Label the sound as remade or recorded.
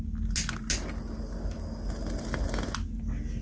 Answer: recorded